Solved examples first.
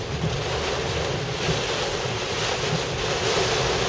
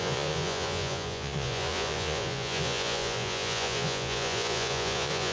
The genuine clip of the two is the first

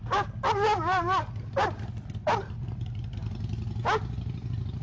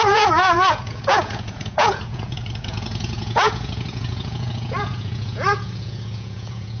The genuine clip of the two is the first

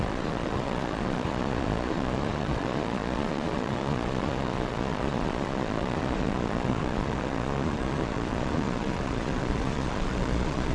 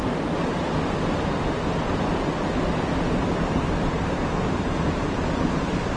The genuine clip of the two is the second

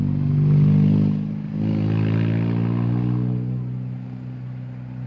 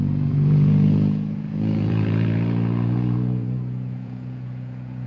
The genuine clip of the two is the first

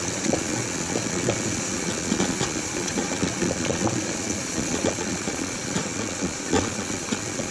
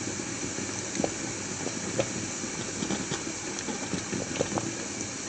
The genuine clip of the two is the second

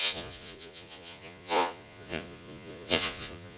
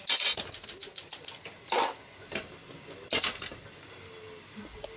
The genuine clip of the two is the second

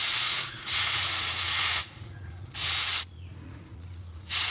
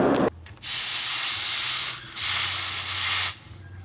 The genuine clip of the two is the second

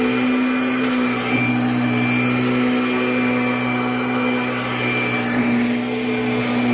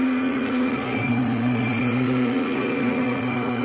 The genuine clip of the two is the first